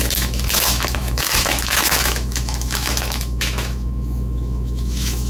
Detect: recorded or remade remade